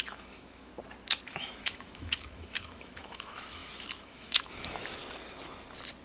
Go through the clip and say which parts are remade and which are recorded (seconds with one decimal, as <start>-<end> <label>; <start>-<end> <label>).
0.0-0.7 remade; 0.7-1.3 recorded; 1.3-5.0 remade; 5.0-6.0 recorded